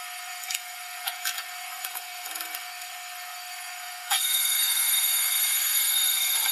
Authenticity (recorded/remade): remade